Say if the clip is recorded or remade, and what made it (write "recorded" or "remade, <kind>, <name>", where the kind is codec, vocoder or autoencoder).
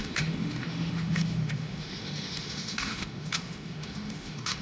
remade, autoencoder, DAC-VAE